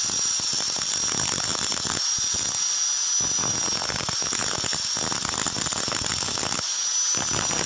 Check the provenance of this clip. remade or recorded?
recorded